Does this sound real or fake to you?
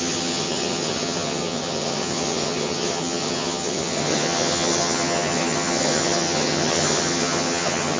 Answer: fake